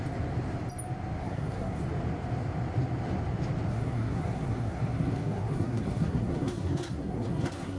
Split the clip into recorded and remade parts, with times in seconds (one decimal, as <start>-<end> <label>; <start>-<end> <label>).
0.0-1.2 recorded; 1.2-1.8 remade; 1.8-3.7 recorded; 3.7-7.8 remade